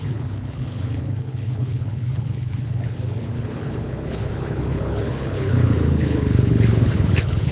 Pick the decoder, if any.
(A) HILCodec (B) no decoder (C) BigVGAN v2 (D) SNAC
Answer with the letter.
A